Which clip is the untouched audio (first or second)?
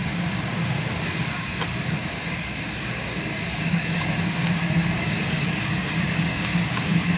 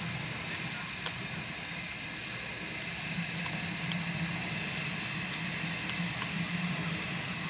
second